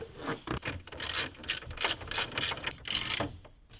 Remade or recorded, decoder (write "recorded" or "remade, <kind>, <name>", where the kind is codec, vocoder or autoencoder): recorded